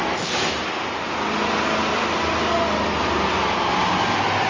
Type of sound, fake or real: real